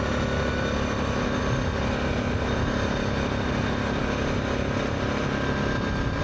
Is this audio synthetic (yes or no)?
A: no